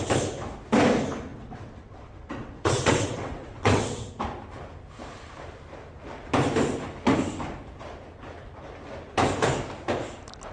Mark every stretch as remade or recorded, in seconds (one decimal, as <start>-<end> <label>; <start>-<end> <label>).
0.0-1.3 recorded; 1.3-4.1 remade; 4.1-10.5 recorded